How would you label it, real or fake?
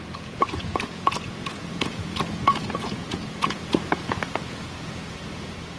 fake